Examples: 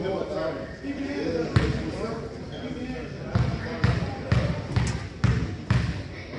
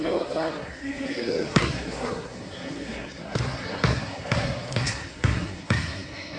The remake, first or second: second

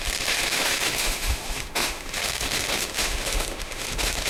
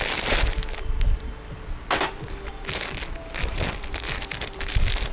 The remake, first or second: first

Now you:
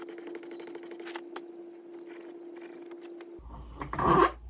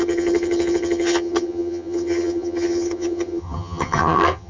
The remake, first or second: second